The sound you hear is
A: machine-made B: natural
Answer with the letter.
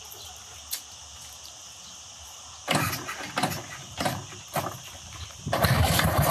B